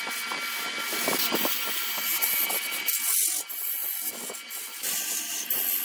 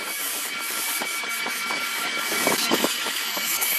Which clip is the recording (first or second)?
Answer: first